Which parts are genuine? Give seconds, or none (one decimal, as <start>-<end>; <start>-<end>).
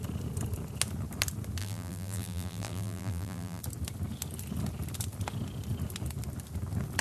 0.0-1.6; 3.6-7.0